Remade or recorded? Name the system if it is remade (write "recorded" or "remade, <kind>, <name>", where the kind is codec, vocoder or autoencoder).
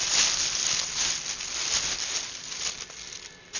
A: recorded